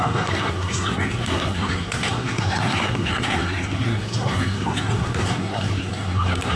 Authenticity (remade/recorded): remade